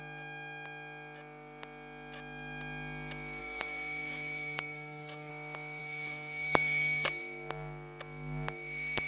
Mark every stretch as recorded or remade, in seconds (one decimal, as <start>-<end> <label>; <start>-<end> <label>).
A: 0.0-3.4 recorded; 3.4-5.3 remade; 5.3-5.8 recorded; 5.8-7.2 remade; 7.2-9.1 recorded